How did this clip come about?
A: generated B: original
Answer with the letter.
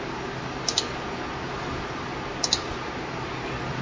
B